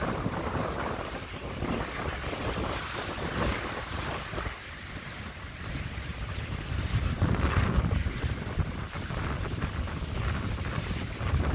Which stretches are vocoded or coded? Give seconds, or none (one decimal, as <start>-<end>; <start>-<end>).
0.0-6.1; 7.8-11.5